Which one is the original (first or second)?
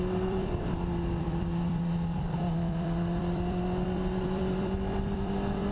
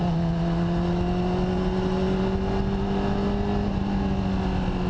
second